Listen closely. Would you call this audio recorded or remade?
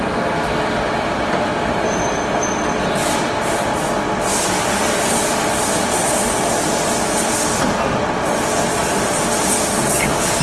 recorded